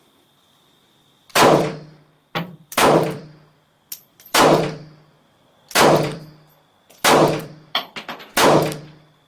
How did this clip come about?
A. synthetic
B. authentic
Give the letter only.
A